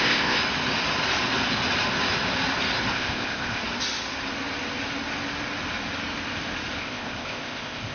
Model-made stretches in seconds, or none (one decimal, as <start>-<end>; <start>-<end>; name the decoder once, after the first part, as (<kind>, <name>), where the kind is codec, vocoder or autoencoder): 0.0-0.4 (codec, ZipCodec); 2.9-3.6; 6.8-7.9